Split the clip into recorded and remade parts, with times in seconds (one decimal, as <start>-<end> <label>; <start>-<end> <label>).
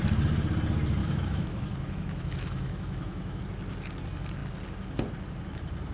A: 0.0-1.0 recorded; 1.0-3.4 remade; 3.4-5.9 recorded